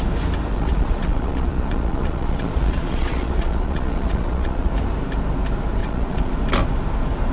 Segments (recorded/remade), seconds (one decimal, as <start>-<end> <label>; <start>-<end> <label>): 0.0-0.5 recorded; 0.5-4.7 remade; 4.7-5.8 recorded; 5.8-6.3 remade; 6.3-7.3 recorded